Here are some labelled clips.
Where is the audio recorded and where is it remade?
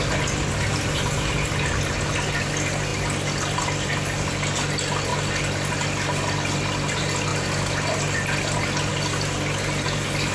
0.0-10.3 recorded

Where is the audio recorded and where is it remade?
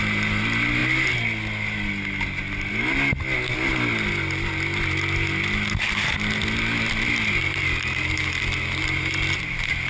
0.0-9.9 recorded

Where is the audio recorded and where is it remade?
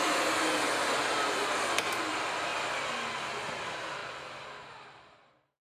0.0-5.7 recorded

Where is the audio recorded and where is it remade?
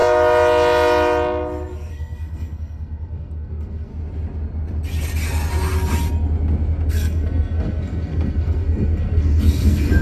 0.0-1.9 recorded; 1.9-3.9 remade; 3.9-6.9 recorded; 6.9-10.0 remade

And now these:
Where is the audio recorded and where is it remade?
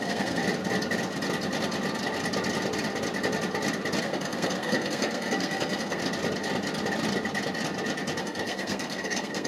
0.0-0.4 remade; 0.4-4.0 recorded; 4.0-6.0 remade; 6.0-8.2 recorded; 8.2-9.5 remade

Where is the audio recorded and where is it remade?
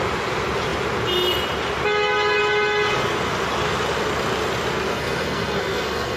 0.0-4.9 recorded; 4.9-6.2 remade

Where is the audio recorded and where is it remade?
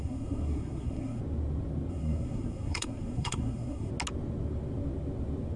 0.0-1.2 remade; 1.2-1.9 recorded; 1.9-3.9 remade; 3.9-5.6 recorded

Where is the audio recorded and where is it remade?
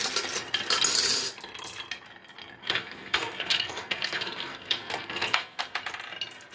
0.0-2.6 recorded; 2.6-5.6 remade; 5.6-6.5 recorded